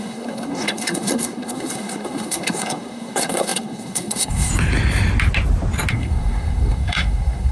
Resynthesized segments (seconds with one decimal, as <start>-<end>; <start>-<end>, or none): 0.0-4.5; 5.9-7.5